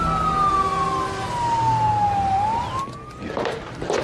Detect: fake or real real